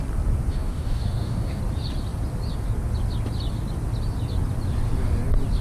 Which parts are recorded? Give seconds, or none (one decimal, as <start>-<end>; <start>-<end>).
0.0-0.5; 1.6-5.6